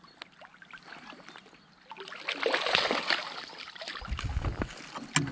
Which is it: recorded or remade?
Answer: recorded